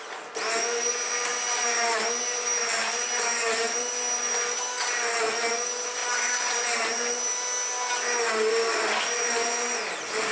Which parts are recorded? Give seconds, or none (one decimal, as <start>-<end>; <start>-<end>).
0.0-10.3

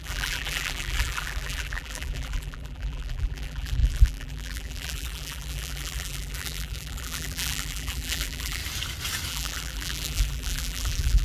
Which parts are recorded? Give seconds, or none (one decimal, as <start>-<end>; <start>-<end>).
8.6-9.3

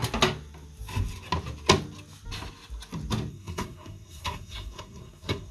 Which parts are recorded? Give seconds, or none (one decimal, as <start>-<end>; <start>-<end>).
0.0-3.3

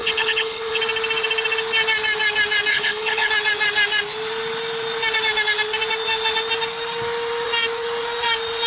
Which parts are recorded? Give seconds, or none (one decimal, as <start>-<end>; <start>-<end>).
0.8-2.7; 3.3-8.7

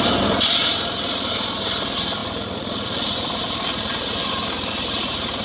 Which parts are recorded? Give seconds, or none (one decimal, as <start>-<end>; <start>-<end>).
0.0-2.2; 4.3-5.4

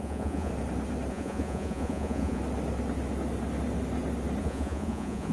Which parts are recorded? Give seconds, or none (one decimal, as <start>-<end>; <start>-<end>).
0.5-1.1; 2.4-4.4